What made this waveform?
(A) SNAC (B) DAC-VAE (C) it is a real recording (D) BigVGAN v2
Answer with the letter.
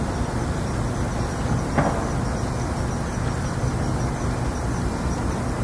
C